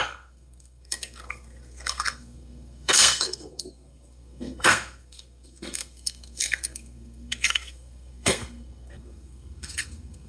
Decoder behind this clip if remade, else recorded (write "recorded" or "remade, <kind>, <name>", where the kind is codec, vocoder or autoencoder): remade, codec, SNAC